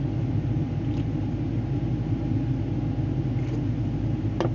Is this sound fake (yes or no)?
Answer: no